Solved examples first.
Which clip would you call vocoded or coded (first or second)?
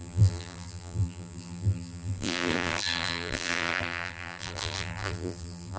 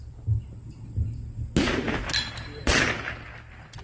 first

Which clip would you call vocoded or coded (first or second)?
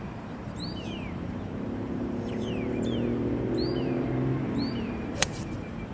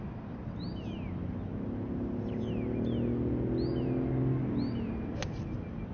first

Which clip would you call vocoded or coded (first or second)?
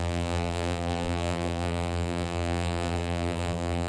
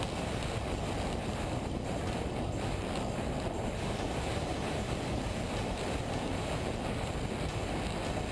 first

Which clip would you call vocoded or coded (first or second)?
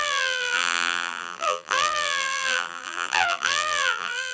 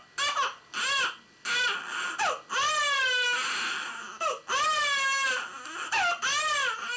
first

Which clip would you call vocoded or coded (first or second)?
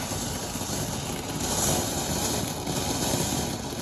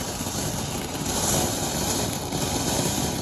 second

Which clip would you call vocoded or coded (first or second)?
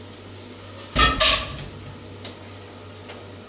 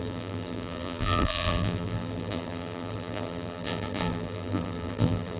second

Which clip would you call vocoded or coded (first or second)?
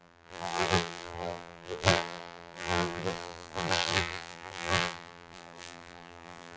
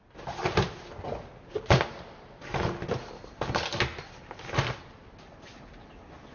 first